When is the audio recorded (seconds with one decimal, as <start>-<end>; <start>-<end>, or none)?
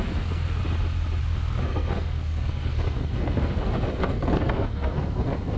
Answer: 0.6-1.2